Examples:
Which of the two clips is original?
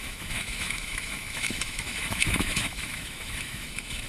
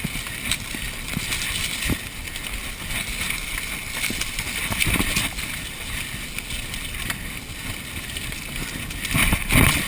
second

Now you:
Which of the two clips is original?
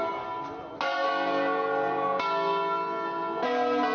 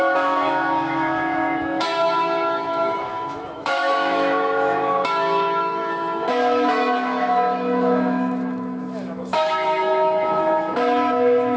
first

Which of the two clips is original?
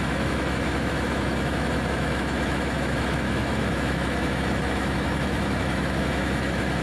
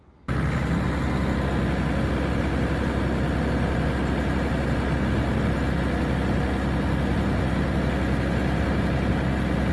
second